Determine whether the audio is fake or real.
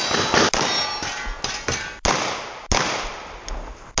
real